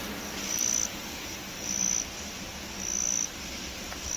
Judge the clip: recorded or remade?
recorded